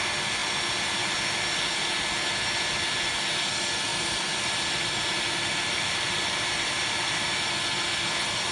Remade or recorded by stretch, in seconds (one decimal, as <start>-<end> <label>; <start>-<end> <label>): 0.0-3.9 recorded; 3.9-7.2 remade; 7.2-8.5 recorded